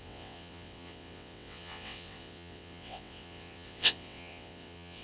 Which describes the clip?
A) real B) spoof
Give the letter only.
B